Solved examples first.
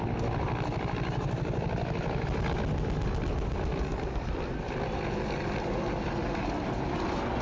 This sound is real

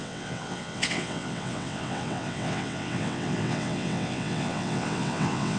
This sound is fake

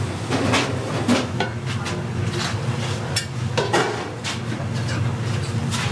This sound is real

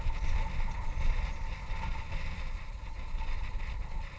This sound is real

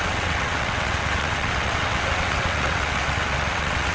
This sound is fake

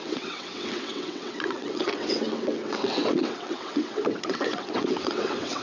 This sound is fake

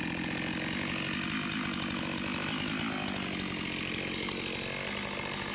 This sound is real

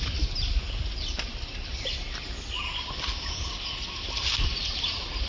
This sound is real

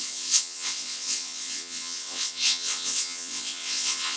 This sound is fake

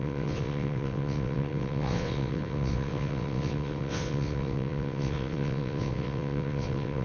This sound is fake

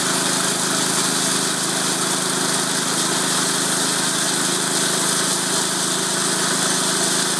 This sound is real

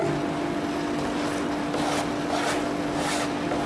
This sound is real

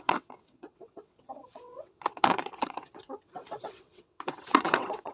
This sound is fake